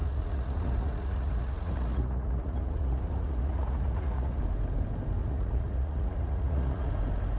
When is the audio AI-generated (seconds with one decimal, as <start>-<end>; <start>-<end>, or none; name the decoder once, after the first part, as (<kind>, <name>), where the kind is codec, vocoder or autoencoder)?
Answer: 0.0-4.4 (vocoder, Vocos); 5.2-6.9